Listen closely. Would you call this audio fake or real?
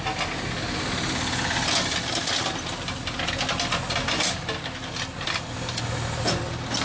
real